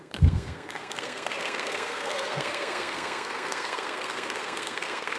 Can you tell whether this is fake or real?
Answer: fake